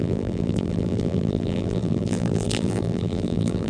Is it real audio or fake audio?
fake